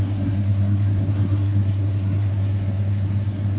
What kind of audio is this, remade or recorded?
remade